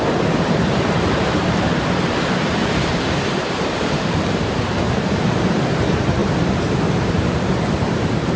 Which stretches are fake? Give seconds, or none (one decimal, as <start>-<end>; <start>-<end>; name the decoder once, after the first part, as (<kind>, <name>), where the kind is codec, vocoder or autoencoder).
0.0-8.4 (vocoder, BigVGAN v2)